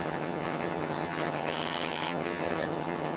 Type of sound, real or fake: fake